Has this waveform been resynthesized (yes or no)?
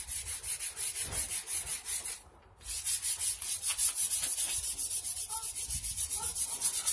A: no